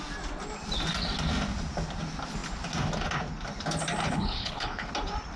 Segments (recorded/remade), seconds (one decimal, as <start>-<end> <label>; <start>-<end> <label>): 0.0-4.0 recorded; 4.0-4.9 remade; 4.9-5.4 recorded